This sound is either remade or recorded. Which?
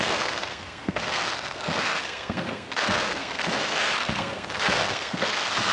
remade